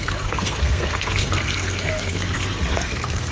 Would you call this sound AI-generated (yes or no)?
yes